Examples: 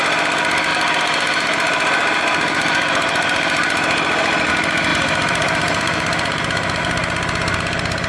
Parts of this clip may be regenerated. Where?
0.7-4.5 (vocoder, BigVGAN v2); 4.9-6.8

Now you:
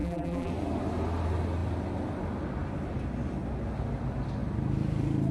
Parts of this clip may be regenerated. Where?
0.0-0.5 (vocoder, BigVGAN v2)

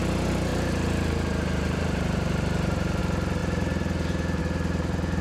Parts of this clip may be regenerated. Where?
0.5-3.0 (vocoder, BigVGAN v2); 3.4-4.4

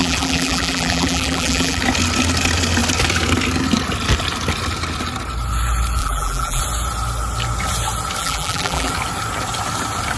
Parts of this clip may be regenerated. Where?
0.0-1.8 (vocoder, BigVGAN v2); 6.0-6.6; 8.2-8.9